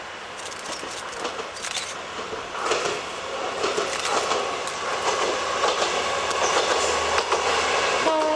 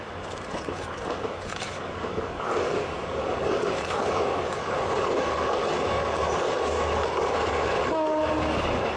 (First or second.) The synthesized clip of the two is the second